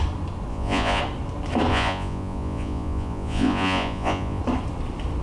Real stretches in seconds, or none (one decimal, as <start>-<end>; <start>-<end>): 0.0-0.5; 1.0-1.7; 4.4-5.2